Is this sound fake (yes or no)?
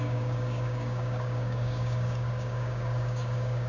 yes